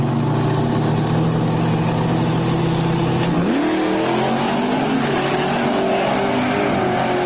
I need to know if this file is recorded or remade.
recorded